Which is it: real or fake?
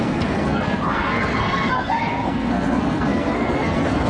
fake